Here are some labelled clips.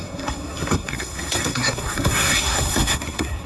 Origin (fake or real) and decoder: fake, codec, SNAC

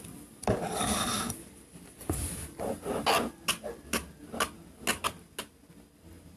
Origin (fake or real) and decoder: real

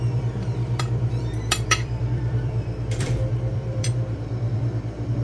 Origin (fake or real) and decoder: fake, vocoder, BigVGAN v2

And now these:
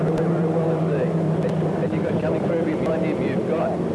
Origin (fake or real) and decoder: real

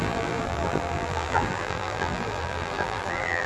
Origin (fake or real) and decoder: fake, vocoder, BigVGAN v2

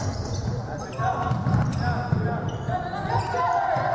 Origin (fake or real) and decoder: real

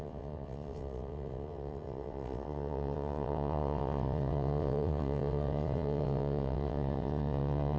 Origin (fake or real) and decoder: fake, vocoder, WaveNeXt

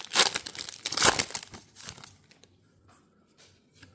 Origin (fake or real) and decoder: fake, vocoder, BigVGAN v2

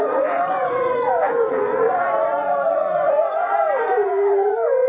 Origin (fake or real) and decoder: fake, vocoder, Vocos